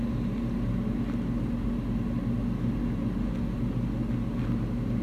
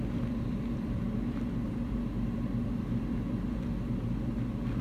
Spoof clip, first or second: second